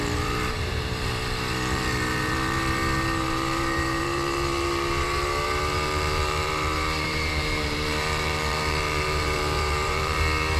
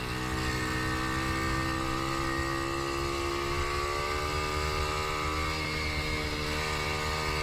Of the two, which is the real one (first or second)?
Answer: second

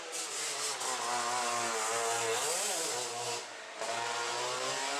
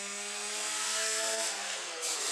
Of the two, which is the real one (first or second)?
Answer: first